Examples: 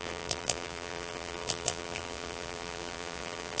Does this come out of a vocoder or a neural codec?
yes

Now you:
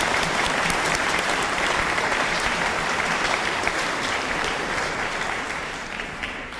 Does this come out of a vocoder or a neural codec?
yes